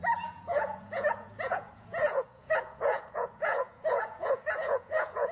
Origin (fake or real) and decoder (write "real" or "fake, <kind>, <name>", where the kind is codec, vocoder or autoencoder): fake, vocoder, Vocos